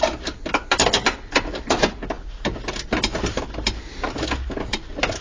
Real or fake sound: real